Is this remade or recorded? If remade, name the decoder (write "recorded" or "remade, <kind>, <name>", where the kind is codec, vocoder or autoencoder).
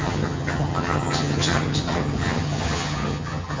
remade, vocoder, HiFi-GAN